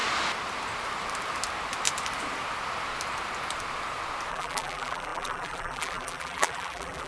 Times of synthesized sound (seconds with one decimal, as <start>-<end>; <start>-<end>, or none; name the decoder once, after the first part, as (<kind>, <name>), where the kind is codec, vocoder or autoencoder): 4.3-7.1 (vocoder, BigVGAN v2)